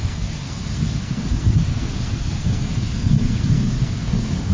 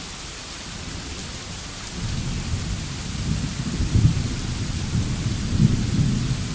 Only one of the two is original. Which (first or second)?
second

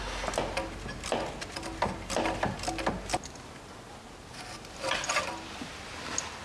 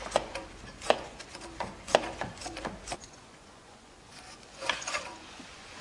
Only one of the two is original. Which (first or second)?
first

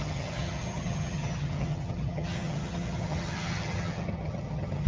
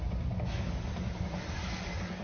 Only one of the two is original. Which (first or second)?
second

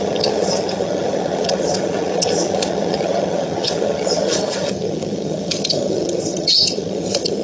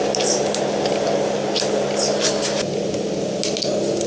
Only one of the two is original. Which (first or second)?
second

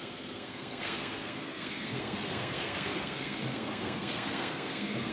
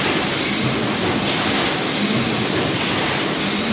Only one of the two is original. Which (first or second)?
second